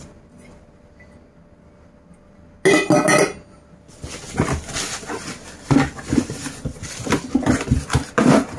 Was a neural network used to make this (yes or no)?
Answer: no